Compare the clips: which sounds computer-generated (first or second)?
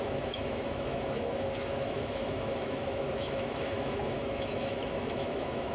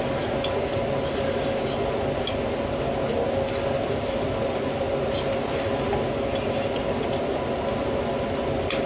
first